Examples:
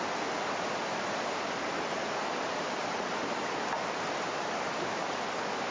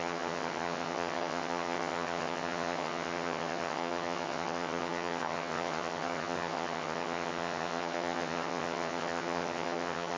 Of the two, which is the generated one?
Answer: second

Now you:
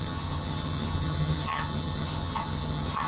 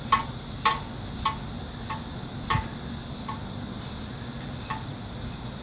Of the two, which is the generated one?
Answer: first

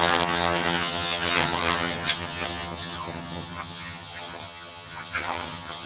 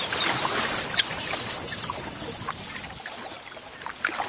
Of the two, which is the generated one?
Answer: first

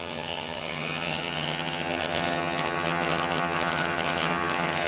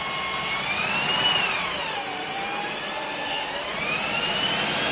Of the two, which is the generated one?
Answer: first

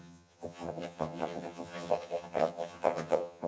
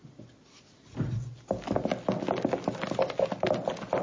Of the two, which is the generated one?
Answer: first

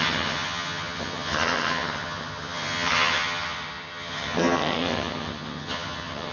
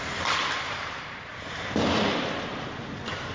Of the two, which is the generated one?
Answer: first